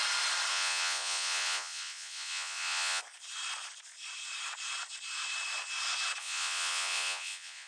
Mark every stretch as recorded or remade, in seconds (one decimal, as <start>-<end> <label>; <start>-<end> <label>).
0.0-0.5 recorded; 0.5-3.0 remade; 3.0-6.2 recorded; 6.2-7.7 remade